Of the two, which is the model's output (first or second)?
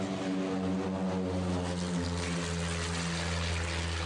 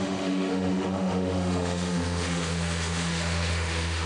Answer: second